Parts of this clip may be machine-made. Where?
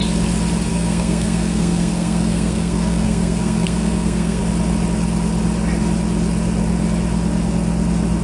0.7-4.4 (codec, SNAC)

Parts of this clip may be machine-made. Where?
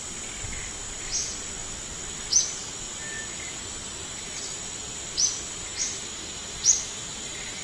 none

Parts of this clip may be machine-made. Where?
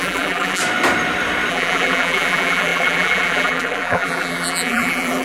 0.0-0.6 (vocoder, BigVGAN v2); 1.5-5.2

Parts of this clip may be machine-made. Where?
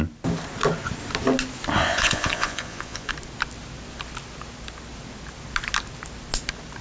1.9-3.1 (vocoder, Vocos)